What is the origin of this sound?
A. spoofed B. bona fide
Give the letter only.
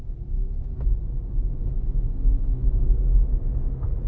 B